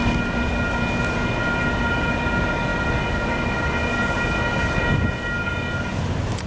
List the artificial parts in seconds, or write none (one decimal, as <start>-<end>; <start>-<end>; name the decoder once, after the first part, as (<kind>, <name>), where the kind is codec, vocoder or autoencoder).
none